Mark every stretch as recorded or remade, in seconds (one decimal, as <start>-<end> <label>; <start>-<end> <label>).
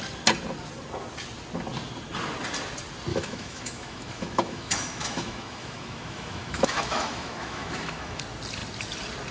0.0-3.1 recorded; 3.1-8.2 remade; 8.2-9.3 recorded